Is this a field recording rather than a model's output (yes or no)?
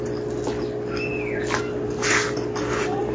yes